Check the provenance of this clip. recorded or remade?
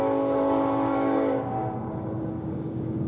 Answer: remade